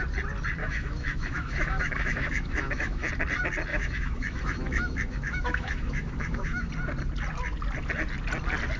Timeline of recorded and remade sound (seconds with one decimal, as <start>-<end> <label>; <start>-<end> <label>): 0.0-0.6 recorded; 0.6-3.1 remade; 3.1-3.7 recorded; 3.7-6.7 remade; 6.7-8.8 recorded